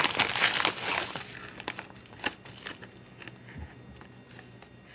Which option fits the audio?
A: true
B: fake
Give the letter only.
A